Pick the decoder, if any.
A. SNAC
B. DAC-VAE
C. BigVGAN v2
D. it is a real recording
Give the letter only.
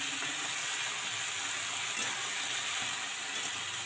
D